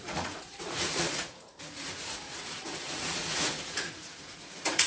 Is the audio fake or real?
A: fake